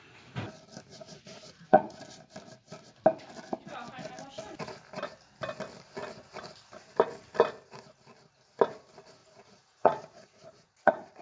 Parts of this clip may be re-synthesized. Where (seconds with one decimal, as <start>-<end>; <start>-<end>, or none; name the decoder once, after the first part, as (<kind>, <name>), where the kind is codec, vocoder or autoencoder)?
0.9-2.0 (vocoder, Vocos); 9.2-11.2